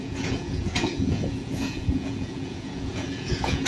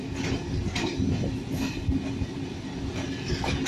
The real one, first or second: second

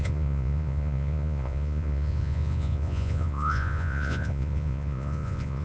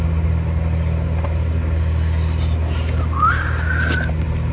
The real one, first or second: second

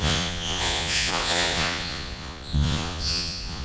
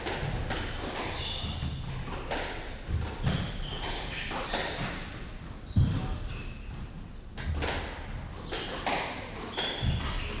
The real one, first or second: second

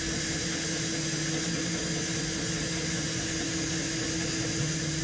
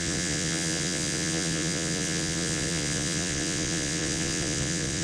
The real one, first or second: first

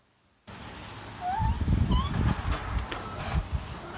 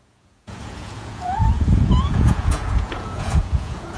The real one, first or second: first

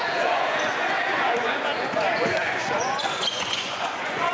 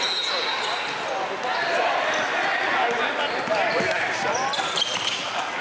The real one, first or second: second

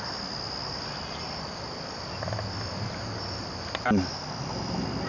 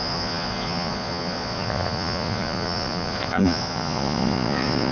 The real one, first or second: first